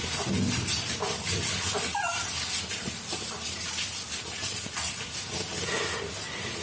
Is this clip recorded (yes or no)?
yes